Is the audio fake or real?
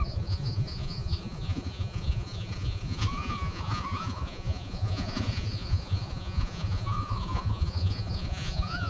fake